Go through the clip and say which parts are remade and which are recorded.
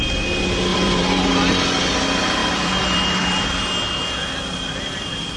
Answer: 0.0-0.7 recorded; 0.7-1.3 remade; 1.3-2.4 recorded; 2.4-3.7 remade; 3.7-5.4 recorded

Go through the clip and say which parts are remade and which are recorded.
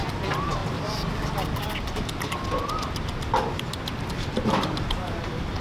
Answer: 0.0-5.6 recorded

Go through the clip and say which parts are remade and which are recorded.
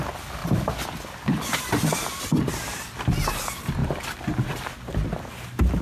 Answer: 0.0-0.4 recorded; 0.4-2.2 remade; 2.2-5.8 recorded